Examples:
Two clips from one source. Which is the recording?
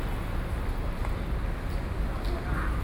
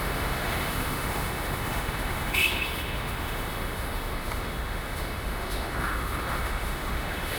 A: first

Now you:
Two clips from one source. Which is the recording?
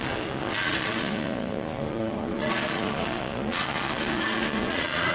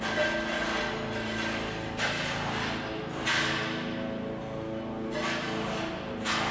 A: second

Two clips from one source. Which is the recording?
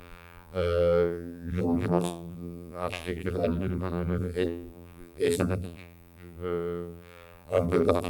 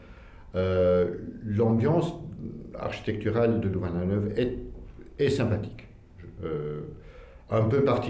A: second